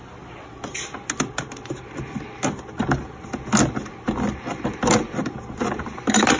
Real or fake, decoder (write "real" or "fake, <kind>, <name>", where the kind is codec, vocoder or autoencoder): real